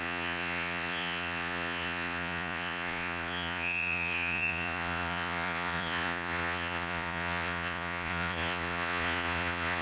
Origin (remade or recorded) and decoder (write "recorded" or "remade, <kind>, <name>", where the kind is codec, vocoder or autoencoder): remade, vocoder, Vocos